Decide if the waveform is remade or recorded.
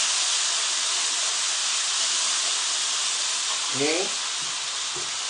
recorded